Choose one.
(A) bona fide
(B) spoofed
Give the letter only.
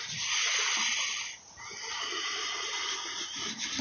A